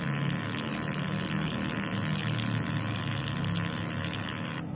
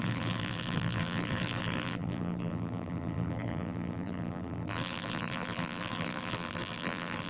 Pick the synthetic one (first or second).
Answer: second